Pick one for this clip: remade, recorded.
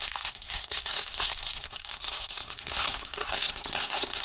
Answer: remade